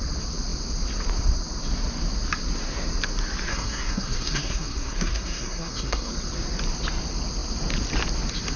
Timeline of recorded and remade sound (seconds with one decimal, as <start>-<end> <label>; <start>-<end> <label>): 0.0-3.5 recorded; 3.5-6.1 remade; 6.1-8.6 recorded

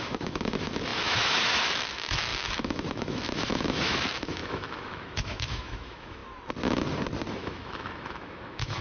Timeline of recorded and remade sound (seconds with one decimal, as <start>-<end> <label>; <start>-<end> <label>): 0.0-6.2 remade; 6.2-7.3 recorded; 7.3-8.8 remade

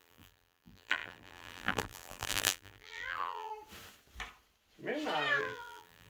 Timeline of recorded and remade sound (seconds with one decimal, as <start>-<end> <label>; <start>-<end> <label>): 0.0-3.5 remade; 3.5-5.4 recorded; 5.4-6.1 remade

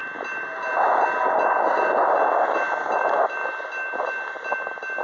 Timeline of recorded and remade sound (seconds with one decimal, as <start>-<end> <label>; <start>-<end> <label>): 0.0-5.0 recorded